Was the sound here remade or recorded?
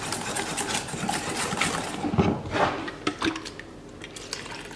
recorded